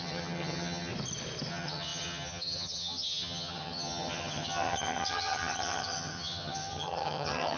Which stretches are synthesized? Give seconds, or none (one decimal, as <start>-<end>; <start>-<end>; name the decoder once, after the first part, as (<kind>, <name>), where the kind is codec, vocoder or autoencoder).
0.0-0.9 (vocoder, HiFi-GAN); 1.5-7.6

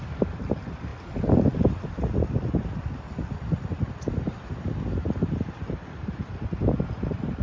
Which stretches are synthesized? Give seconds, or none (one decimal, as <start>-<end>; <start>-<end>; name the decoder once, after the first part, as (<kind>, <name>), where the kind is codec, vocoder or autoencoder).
none

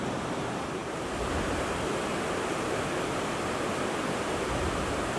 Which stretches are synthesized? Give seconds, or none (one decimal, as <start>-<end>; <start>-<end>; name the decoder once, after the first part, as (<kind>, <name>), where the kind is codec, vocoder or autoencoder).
none

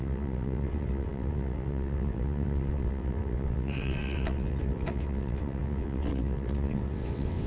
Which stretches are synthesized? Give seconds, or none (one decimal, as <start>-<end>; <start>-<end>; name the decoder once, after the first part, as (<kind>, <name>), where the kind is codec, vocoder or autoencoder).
0.0-7.5 (vocoder, WaveNeXt)

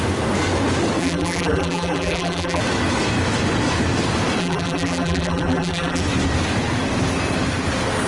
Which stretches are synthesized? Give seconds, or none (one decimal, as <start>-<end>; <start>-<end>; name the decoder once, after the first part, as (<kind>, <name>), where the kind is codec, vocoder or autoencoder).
1.0-2.6 (vocoder, BigVGAN v2); 4.4-6.0

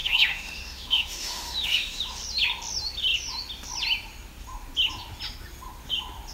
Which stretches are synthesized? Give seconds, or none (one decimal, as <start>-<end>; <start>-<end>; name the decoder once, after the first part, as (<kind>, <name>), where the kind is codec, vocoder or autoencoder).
0.0-2.0 (autoencoder, DAC-VAE)